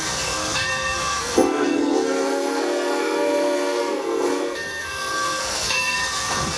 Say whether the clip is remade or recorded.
remade